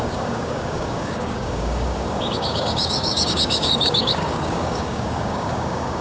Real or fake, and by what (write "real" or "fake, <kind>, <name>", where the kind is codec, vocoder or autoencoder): fake, codec, DAC